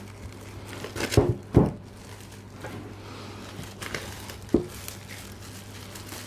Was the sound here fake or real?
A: real